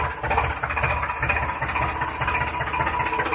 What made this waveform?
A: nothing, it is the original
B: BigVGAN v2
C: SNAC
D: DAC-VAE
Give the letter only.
A